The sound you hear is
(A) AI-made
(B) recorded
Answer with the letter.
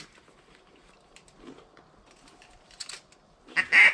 B